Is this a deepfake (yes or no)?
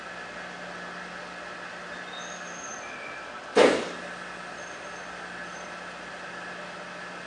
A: no